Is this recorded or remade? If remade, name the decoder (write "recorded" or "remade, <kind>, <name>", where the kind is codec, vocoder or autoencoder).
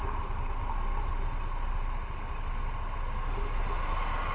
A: recorded